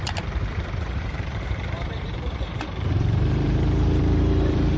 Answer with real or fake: fake